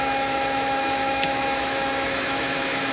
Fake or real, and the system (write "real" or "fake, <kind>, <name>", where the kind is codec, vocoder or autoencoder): fake, autoencoder, DAC-VAE